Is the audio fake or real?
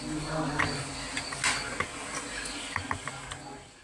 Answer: real